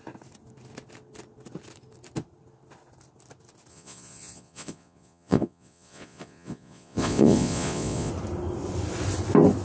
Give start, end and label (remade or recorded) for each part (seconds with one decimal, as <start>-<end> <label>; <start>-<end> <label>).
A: 0.0-3.7 recorded; 3.7-8.1 remade; 8.1-9.6 recorded

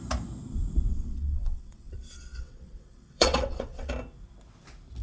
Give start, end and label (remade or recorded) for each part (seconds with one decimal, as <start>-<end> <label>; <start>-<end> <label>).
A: 0.0-0.9 recorded; 0.9-3.9 remade; 3.9-5.0 recorded

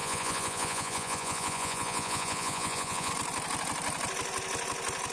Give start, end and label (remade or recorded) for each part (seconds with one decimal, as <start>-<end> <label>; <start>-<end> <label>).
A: 0.0-3.1 remade; 3.1-5.1 recorded